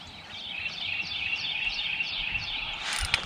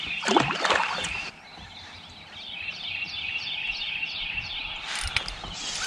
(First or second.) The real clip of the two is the second